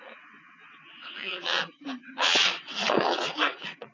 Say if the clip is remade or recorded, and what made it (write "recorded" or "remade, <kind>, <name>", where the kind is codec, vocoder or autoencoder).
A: remade, vocoder, WaveNeXt